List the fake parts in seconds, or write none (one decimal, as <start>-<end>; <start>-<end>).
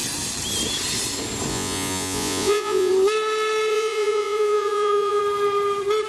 1.5-2.9; 3.7-5.2